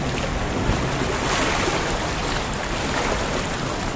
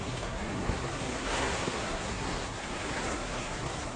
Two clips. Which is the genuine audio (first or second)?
first